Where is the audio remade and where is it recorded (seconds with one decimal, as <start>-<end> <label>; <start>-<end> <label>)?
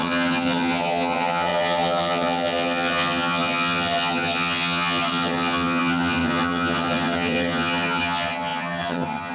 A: 0.0-9.3 remade